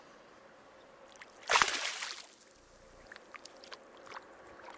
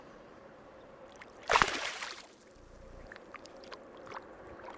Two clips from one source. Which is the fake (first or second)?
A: second